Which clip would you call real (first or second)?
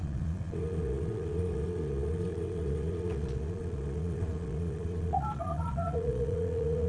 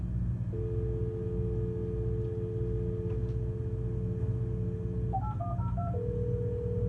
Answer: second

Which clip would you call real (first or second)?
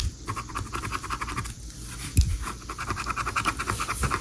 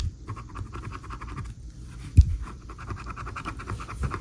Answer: first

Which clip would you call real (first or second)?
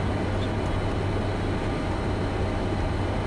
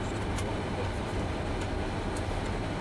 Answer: first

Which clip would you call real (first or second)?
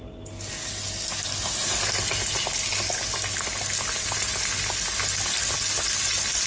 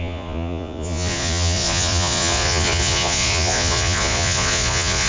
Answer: first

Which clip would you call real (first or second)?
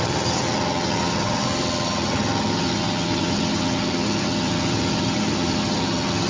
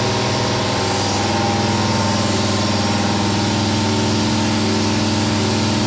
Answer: second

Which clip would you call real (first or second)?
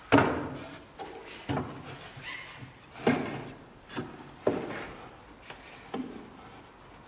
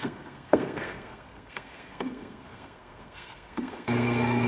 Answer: first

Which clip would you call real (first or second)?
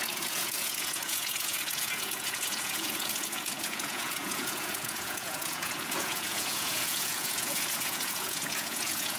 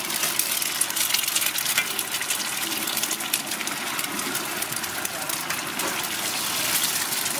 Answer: second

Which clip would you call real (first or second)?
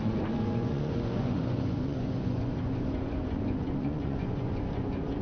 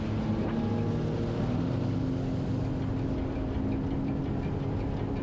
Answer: second